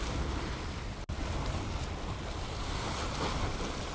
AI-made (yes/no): no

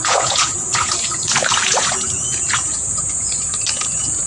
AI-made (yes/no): yes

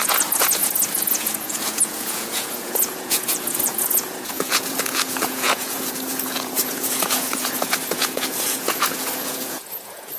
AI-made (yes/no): yes